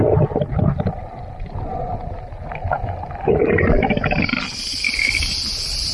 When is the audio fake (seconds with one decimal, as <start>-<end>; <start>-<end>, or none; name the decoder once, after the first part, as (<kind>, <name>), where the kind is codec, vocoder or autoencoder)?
none